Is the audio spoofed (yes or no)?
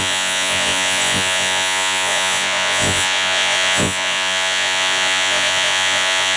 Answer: yes